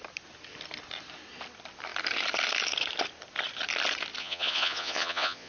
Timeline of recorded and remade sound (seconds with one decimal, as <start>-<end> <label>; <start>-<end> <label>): 0.0-4.2 recorded; 4.2-5.5 remade